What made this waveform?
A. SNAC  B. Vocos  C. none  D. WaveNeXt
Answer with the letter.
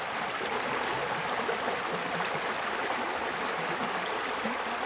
C